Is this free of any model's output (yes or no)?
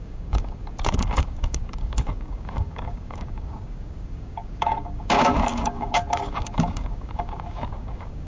no